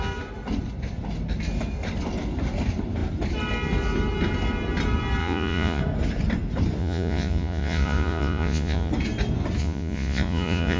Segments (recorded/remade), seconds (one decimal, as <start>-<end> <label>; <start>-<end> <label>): 0.0-5.2 recorded; 5.2-5.8 remade; 5.8-6.8 recorded; 6.8-8.9 remade; 8.9-9.6 recorded; 9.6-10.8 remade